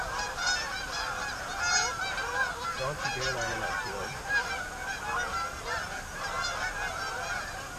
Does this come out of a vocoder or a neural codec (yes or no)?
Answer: no